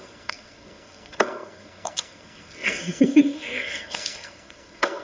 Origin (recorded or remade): remade